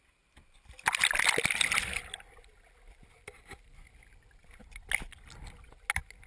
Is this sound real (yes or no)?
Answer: yes